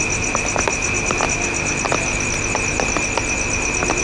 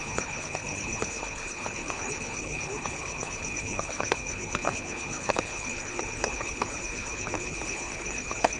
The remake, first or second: second